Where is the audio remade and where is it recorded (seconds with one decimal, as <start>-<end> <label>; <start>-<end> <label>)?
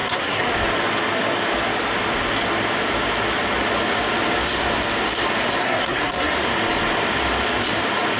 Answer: 0.0-0.5 remade; 0.5-5.6 recorded; 5.6-6.3 remade; 6.3-8.2 recorded